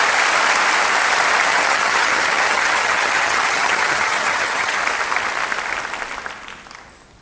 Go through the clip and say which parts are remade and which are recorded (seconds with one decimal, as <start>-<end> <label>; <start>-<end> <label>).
0.0-1.5 recorded; 1.5-4.8 remade; 4.8-7.2 recorded